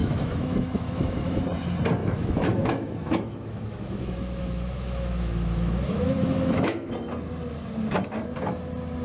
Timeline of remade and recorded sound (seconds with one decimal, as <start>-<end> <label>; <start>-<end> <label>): 0.0-1.4 remade; 1.4-2.0 recorded; 2.0-6.9 remade; 6.9-9.0 recorded